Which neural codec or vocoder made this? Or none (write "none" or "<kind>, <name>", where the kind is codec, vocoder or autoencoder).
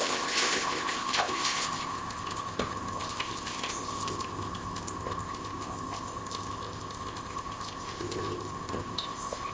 codec, ZipCodec